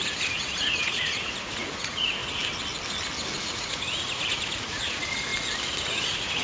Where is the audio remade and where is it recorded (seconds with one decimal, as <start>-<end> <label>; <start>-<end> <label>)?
0.0-2.2 remade; 2.2-3.4 recorded; 3.4-5.3 remade; 5.3-5.9 recorded; 5.9-6.4 remade